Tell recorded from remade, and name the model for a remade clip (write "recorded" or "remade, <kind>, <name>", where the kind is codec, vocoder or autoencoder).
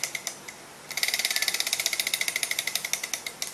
recorded